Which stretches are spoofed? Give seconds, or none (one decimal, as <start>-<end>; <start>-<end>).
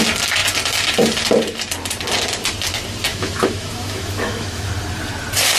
3.1-4.7